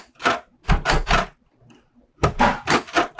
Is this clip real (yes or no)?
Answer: yes